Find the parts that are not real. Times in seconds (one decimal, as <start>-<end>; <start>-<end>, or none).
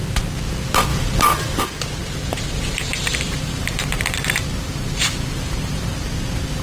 2.9-5.9